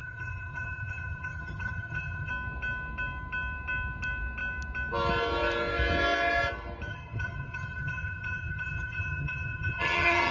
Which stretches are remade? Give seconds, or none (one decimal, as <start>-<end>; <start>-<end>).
0.0-2.3; 6.9-10.3